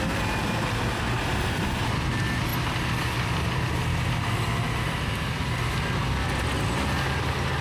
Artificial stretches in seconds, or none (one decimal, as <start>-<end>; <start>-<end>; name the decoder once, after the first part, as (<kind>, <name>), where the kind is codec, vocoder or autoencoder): none